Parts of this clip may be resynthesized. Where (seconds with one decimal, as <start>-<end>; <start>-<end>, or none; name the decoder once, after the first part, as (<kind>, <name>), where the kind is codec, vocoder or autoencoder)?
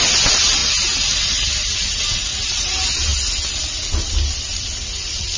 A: none